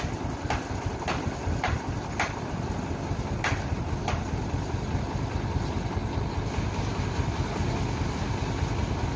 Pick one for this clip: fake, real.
real